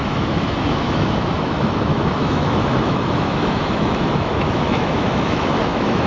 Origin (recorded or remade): remade